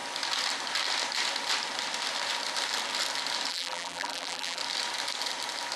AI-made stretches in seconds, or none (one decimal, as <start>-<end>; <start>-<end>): 3.5-4.6